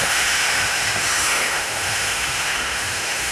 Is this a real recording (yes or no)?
no